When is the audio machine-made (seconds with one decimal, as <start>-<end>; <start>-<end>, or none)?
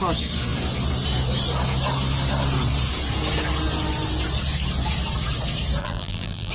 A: 5.8-6.5